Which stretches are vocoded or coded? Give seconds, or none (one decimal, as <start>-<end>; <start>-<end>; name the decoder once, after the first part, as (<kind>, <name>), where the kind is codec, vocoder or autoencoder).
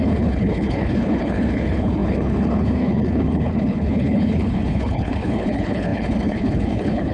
0.0-7.1 (codec, HILCodec)